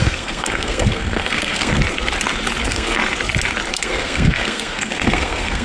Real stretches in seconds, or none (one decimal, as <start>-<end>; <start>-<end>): 1.8-2.6; 3.0-3.7